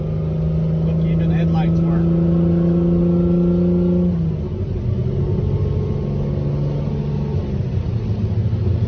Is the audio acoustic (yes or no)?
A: yes